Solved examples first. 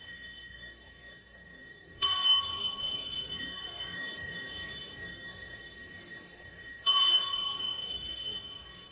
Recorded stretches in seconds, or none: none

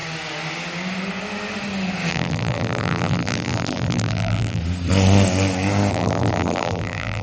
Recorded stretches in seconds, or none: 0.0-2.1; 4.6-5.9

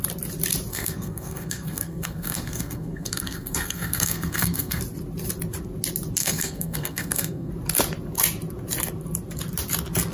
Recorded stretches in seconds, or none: 0.0-0.7; 4.8-6.2; 7.5-10.1

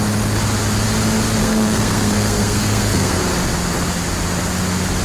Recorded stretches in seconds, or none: 0.0-1.4; 3.2-5.0

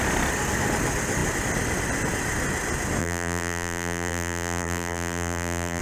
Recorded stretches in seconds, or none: 0.0-3.0

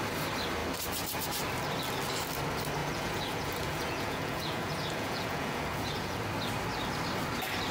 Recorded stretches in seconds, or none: 0.0-2.8; 6.2-7.7

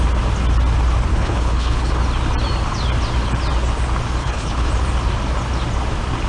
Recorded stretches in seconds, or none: 0.0-1.1; 1.9-4.2; 4.7-6.3

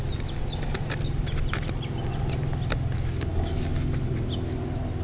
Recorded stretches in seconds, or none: 0.0-3.3; 4.0-5.0